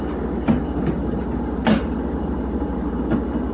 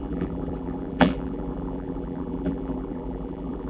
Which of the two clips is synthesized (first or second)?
second